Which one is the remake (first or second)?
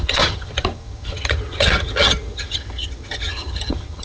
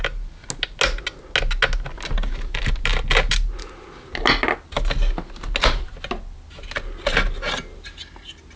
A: first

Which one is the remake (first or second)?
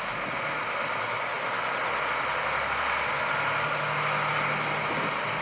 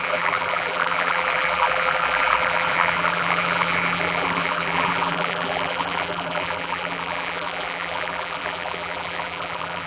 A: second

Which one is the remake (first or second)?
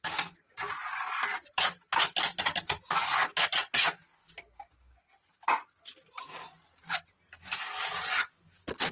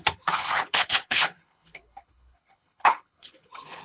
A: second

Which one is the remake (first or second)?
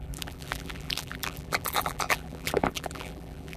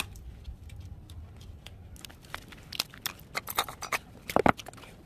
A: first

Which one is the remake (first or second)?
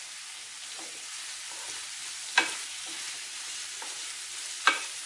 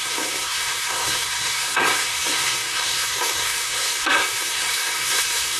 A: second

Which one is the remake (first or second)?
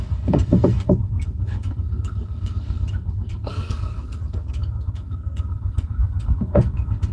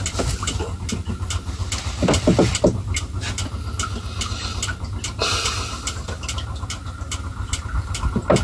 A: first